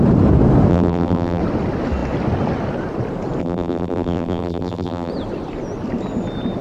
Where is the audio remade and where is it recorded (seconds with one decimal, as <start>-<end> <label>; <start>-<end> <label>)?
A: 0.0-0.7 recorded; 0.7-1.4 remade; 1.4-3.4 recorded; 3.4-5.1 remade; 5.1-6.6 recorded